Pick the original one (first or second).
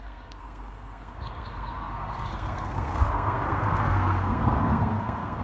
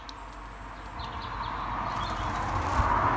second